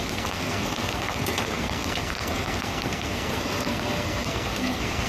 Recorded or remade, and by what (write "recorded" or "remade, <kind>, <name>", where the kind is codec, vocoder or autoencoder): remade, codec, SNAC